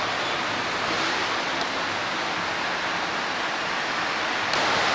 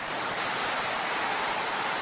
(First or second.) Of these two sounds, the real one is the first